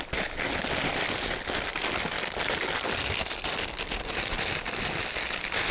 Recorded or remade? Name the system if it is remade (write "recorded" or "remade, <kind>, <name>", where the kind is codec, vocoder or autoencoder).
recorded